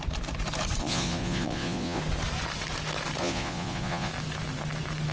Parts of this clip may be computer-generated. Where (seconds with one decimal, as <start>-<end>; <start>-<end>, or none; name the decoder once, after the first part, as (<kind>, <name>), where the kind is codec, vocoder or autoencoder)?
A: 0.8-2.0 (vocoder, Vocos); 3.2-4.1

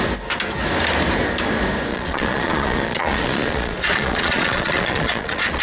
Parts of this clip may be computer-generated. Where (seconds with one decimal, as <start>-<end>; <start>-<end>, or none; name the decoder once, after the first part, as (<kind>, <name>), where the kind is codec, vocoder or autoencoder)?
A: 1.9-5.6 (vocoder, Vocos)